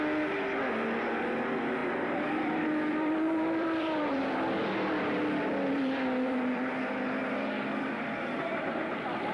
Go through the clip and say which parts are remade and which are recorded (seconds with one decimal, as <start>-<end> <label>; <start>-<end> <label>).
0.0-1.8 recorded; 1.8-6.7 remade; 6.7-9.3 recorded